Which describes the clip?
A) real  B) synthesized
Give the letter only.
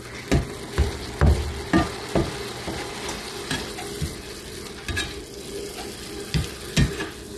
A